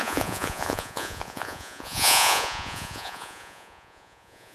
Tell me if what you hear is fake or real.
fake